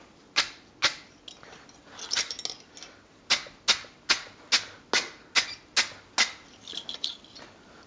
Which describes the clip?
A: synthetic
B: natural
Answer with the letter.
B